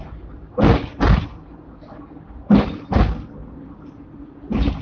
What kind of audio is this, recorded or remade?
recorded